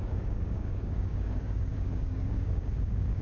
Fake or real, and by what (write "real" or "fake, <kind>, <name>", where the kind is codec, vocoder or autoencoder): fake, codec, DAC